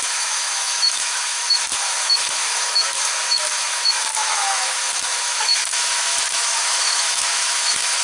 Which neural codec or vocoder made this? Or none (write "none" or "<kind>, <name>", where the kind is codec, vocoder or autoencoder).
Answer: autoencoder, DAC-VAE